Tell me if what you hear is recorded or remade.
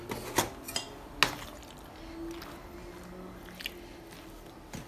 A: recorded